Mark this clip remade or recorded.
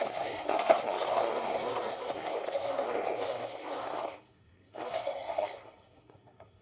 remade